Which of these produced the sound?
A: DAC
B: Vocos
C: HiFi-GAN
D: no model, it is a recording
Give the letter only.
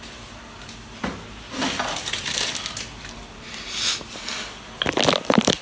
D